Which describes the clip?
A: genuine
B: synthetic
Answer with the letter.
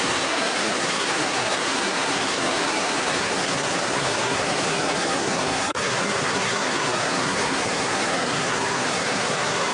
B